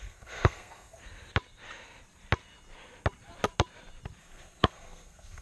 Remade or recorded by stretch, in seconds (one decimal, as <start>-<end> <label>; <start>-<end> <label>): 0.0-1.0 remade; 1.0-4.2 recorded; 4.2-5.4 remade